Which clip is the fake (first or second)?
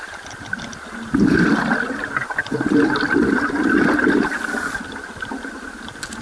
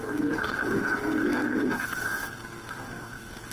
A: second